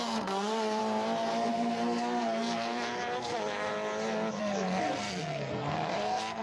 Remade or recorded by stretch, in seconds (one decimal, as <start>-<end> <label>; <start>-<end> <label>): 0.0-0.8 remade; 0.8-1.5 recorded; 1.5-3.7 remade; 3.7-4.4 recorded; 4.4-6.4 remade